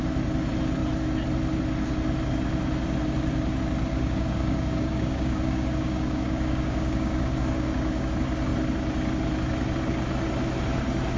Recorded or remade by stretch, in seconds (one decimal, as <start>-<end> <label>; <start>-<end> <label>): 0.0-3.9 recorded; 3.9-8.1 remade; 8.1-11.2 recorded